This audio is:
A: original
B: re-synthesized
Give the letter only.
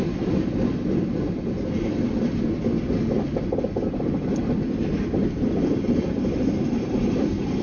B